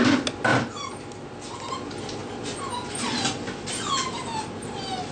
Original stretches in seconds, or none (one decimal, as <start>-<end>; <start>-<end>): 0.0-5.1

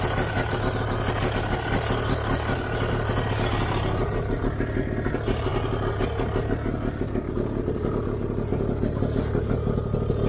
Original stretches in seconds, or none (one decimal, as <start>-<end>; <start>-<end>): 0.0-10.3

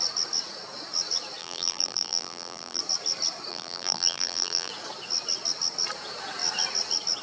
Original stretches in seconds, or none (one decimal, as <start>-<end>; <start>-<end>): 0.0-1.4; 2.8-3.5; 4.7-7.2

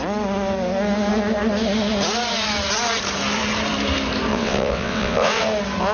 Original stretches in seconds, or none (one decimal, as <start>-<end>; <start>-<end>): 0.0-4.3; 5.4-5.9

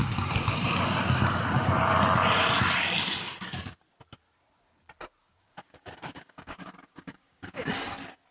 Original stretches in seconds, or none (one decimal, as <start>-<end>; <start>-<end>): 0.0-5.2; 7.7-8.3

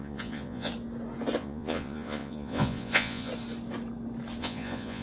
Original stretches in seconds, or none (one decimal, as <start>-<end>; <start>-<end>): 0.7-1.4; 3.3-4.4

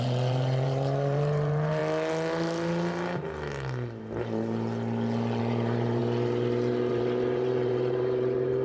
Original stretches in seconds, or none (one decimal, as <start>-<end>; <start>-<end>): 1.8-5.4; 6.0-6.9

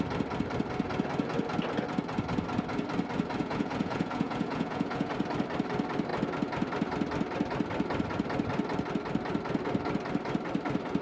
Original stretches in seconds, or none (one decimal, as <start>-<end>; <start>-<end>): 0.0-3.4; 5.1-11.0